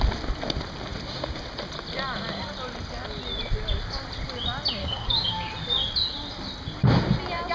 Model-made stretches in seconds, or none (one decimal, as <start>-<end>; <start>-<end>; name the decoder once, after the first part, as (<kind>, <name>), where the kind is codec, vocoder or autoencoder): 4.8-5.5 (codec, DAC)